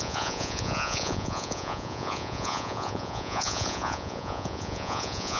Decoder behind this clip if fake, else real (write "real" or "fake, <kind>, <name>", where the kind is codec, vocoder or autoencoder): fake, vocoder, Vocos